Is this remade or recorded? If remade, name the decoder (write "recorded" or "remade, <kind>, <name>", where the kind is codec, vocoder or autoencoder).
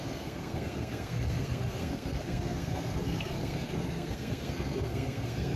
remade, codec, SNAC